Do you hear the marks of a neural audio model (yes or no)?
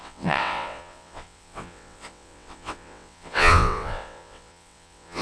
yes